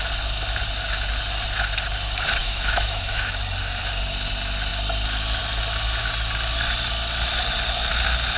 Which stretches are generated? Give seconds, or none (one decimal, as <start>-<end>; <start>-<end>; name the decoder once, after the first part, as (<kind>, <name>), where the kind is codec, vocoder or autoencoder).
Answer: 2.4-3.4 (autoencoder, DAC-VAE)